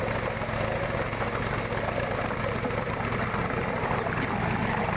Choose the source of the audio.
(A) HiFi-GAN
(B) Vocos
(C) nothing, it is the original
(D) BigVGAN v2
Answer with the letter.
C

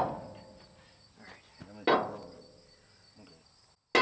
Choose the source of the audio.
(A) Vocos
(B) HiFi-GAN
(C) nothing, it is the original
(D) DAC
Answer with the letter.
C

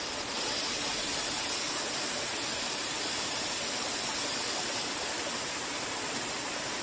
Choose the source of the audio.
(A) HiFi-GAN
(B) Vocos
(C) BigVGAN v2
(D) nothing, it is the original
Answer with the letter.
D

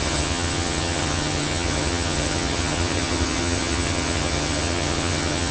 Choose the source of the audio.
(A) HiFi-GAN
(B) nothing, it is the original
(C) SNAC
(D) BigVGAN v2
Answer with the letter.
A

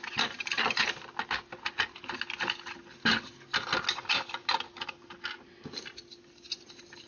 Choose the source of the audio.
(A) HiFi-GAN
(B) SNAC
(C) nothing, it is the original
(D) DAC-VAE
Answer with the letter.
C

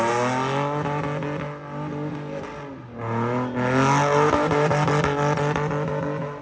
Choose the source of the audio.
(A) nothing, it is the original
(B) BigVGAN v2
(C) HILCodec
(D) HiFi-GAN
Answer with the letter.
A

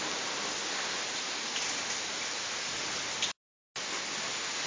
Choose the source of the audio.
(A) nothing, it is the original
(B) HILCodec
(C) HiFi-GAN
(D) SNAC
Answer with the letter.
A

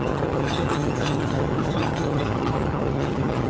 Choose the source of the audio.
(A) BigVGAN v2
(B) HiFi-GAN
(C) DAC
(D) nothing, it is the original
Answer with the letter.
B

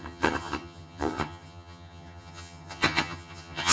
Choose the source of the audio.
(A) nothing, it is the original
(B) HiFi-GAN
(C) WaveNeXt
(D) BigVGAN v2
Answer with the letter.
B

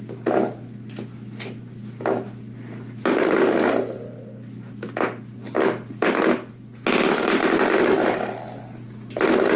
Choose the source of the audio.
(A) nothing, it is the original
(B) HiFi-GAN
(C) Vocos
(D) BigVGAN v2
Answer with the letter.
A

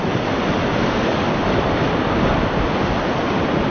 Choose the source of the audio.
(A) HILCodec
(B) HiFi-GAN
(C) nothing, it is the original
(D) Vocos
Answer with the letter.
C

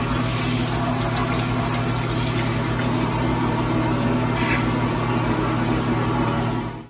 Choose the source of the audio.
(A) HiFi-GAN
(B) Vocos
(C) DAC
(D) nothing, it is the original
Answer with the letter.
D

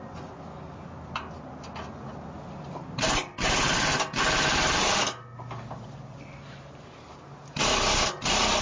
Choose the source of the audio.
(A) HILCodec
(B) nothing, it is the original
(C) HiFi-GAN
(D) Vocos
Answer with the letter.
B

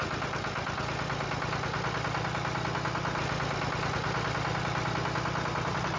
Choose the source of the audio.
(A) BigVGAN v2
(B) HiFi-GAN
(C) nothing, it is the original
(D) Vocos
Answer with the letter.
C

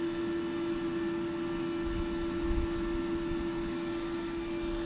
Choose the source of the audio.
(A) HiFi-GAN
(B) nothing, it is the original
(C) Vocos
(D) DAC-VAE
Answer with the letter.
B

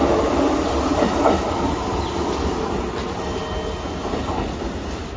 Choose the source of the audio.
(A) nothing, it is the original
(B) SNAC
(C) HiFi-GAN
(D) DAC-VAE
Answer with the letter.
A